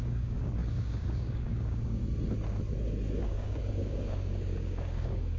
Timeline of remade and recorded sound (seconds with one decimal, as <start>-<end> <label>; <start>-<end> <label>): 0.0-2.0 remade; 2.0-3.2 recorded; 3.2-5.4 remade

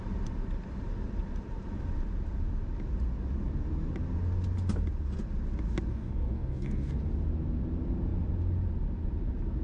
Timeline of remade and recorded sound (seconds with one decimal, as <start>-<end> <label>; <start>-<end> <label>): 0.0-5.9 recorded; 5.9-6.9 remade; 6.9-9.6 recorded